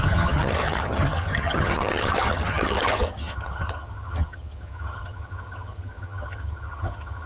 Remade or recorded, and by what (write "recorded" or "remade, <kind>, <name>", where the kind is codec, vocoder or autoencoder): remade, vocoder, HiFi-GAN